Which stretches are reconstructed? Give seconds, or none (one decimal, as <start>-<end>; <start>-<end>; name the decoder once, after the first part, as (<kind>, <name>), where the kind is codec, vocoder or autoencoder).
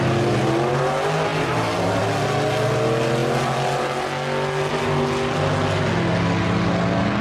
none